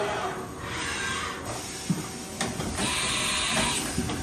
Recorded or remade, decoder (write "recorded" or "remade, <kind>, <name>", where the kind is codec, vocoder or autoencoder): recorded